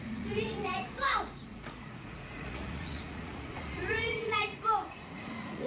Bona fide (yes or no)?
no